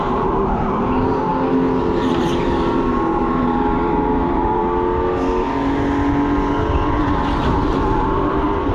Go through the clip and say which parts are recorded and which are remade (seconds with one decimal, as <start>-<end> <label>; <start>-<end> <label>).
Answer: 0.0-1.3 remade; 1.3-1.8 recorded; 1.8-4.6 remade; 4.6-7.4 recorded; 7.4-8.7 remade